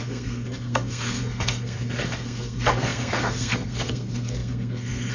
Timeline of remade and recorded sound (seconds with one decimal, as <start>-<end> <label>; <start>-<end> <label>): 0.0-5.1 remade